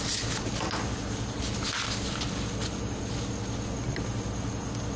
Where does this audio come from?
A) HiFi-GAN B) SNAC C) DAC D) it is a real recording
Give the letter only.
D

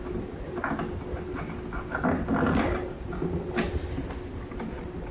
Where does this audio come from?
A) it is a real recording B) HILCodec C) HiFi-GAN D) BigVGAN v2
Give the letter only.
A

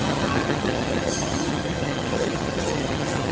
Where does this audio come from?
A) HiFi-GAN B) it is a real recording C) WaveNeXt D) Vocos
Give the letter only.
A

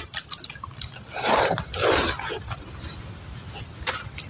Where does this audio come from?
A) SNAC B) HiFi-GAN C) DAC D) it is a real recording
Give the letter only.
D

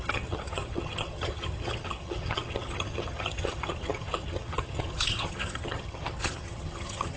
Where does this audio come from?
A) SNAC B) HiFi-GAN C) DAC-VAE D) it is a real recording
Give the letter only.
B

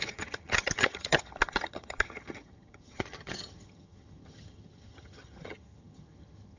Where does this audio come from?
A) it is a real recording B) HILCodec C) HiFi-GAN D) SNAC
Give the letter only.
C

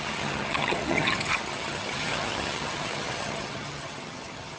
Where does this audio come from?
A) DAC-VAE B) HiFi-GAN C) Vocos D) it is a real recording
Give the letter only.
B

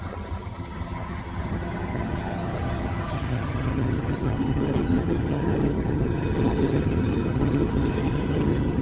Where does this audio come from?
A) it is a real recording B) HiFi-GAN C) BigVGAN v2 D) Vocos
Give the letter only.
B